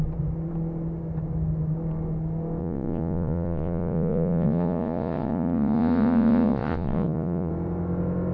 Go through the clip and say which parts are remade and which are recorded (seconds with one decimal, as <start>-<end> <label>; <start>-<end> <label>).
0.0-2.6 recorded; 2.6-7.5 remade; 7.5-8.3 recorded